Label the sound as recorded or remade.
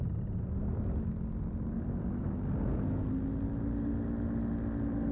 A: recorded